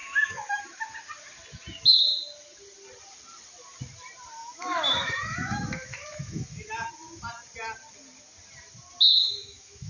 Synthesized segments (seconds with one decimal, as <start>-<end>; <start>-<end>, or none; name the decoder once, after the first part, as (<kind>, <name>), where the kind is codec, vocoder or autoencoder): 0.0-0.6 (autoencoder, DAC-VAE); 4.4-6.9; 9.1-9.9